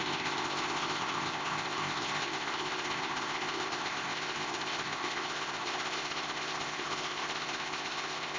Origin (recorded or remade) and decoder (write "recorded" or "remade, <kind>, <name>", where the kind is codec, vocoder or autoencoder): remade, codec, ZipCodec